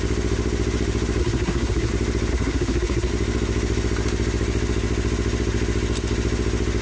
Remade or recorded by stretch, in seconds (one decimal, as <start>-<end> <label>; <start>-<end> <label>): 0.0-1.2 recorded; 1.2-1.9 remade; 1.9-2.3 recorded; 2.3-3.1 remade; 3.1-6.8 recorded